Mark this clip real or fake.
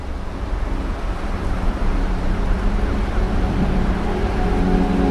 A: real